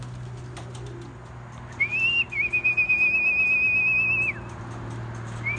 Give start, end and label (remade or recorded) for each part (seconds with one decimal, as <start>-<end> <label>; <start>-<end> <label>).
0.0-5.6 recorded